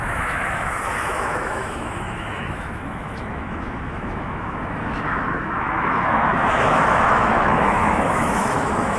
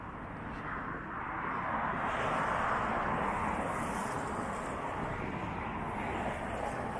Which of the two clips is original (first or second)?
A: second